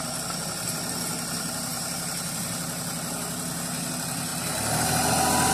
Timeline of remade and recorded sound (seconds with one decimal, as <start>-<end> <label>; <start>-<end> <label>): 0.0-5.5 recorded